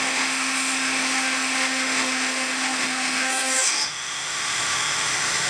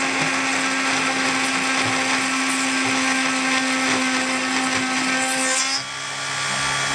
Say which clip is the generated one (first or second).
first